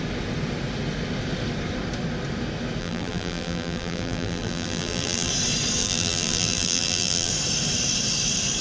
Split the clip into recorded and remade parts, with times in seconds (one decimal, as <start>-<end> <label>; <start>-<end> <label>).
0.0-2.8 recorded; 2.8-5.3 remade; 5.3-5.8 recorded; 5.8-7.3 remade; 7.3-8.6 recorded